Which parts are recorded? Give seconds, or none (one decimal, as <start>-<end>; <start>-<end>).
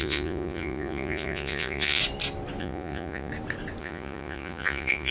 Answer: 2.0-2.6; 3.3-3.8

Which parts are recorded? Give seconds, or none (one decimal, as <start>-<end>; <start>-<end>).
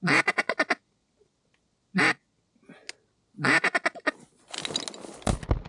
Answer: 0.0-5.7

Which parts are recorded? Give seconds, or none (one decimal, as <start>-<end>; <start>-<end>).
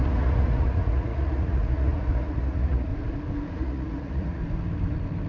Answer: 2.9-3.5; 4.4-5.3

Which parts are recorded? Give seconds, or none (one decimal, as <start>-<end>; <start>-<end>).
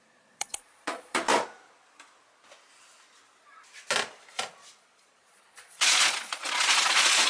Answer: 1.3-4.8